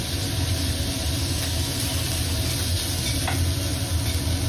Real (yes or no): yes